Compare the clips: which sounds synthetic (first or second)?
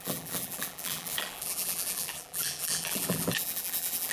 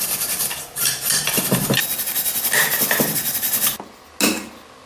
first